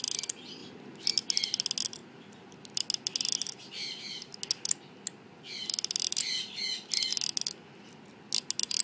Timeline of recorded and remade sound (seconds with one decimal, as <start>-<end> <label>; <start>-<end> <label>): 0.0-8.8 recorded

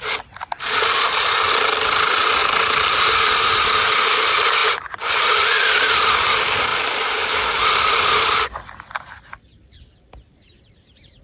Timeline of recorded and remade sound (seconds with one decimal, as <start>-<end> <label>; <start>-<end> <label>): 0.0-4.6 recorded; 4.6-5.6 remade; 5.6-11.2 recorded

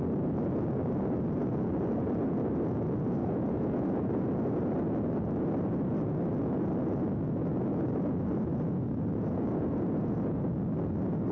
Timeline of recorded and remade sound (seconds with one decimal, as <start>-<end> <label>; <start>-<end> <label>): 0.0-3.2 recorded; 3.2-4.2 remade; 4.2-8.5 recorded; 8.5-10.6 remade; 10.6-11.3 recorded

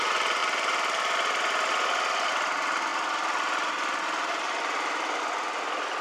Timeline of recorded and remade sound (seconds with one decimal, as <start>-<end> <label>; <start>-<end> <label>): 0.0-6.0 recorded

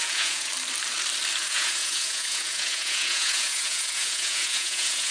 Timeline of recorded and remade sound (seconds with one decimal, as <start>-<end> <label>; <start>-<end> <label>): 0.0-0.5 remade; 0.5-1.4 recorded; 1.4-5.1 remade

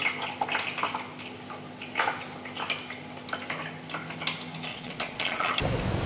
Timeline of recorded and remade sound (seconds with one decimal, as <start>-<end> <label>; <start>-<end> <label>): 0.0-4.7 recorded; 4.7-5.5 remade; 5.5-6.1 recorded

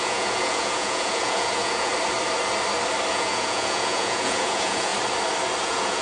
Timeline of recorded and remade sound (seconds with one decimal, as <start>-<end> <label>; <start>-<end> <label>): 0.0-1.9 remade; 1.9-3.1 recorded; 3.1-4.9 remade; 4.9-5.6 recorded; 5.6-6.0 remade

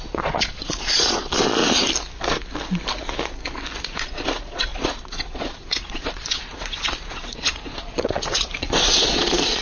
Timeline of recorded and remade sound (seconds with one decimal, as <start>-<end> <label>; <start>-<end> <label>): 0.0-1.6 remade; 1.6-3.8 recorded; 3.8-9.6 remade